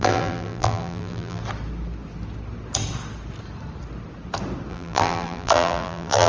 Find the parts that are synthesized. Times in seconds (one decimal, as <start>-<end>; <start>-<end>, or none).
0.0-1.4; 4.7-6.3